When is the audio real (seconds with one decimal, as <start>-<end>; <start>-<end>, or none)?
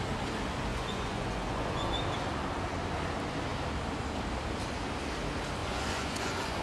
0.0-0.7; 2.0-5.6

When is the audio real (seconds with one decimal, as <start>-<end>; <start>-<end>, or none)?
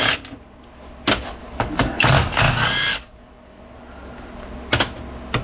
0.0-1.4; 2.0-2.9; 3.6-5.4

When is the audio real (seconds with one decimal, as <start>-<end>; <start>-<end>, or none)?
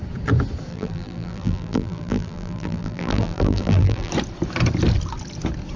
0.0-0.7; 4.1-5.8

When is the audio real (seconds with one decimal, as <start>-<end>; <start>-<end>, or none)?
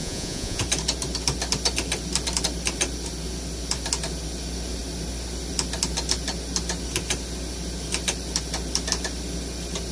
0.6-9.9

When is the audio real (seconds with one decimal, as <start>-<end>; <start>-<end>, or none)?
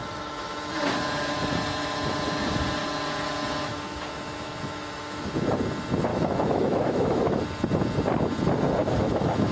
0.7-3.6; 5.3-6.1; 7.4-8.8